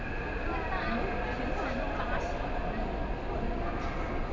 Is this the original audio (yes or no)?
yes